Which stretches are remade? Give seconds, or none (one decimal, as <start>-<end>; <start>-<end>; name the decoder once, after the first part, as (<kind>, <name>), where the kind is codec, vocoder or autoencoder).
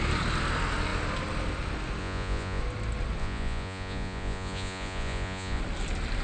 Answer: 2.0-2.6 (vocoder, Vocos); 3.2-5.6